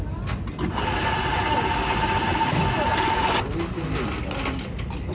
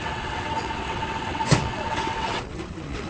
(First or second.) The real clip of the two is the first